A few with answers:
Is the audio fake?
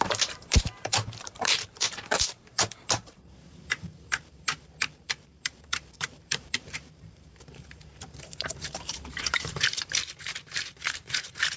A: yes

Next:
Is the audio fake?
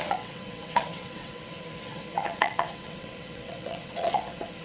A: yes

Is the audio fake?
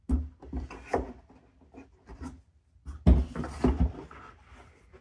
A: no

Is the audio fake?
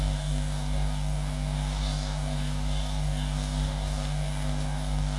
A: yes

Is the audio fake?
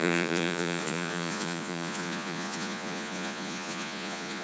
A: yes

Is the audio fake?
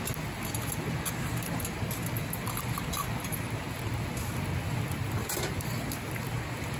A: no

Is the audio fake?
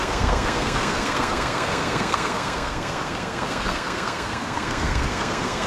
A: yes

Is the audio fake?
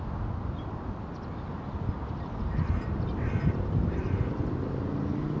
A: no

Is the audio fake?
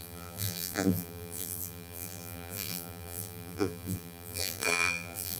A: yes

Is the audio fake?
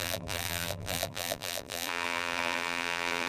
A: yes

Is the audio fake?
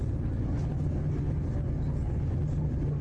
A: no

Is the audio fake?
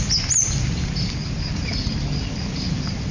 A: no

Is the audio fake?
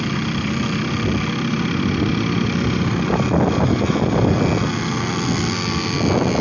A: no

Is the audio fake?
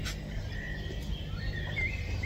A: no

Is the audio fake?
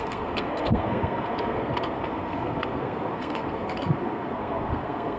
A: yes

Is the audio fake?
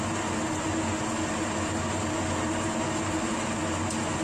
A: no